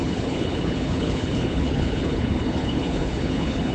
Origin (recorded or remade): remade